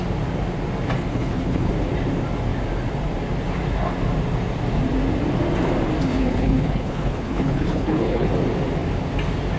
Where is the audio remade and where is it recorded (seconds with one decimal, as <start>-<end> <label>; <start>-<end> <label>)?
0.0-1.1 recorded; 1.1-1.7 remade; 1.7-6.1 recorded; 6.1-8.3 remade; 8.3-9.6 recorded